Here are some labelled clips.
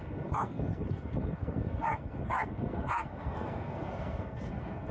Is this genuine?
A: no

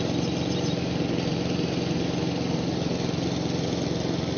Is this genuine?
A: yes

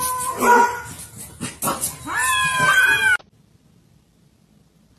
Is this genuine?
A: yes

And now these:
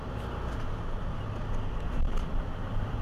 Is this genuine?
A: yes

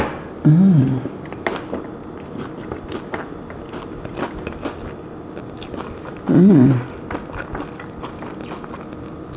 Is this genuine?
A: yes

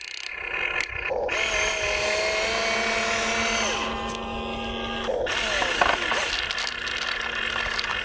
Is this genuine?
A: yes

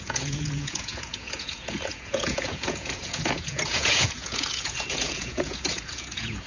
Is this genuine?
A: no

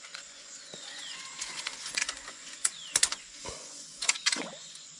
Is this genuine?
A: no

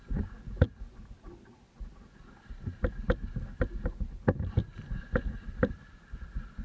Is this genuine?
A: yes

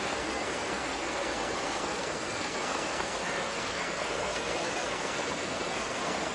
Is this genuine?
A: no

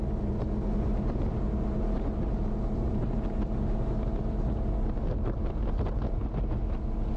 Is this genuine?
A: yes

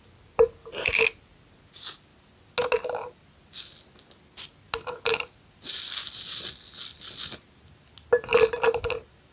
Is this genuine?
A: yes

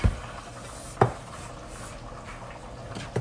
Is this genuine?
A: yes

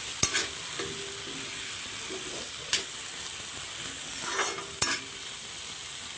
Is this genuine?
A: yes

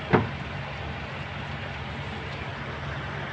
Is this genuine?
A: yes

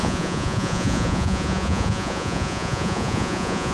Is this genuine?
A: no